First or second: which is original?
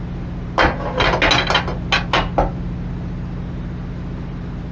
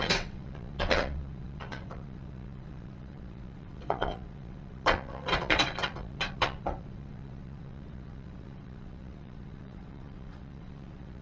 first